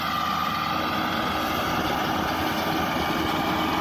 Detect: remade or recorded recorded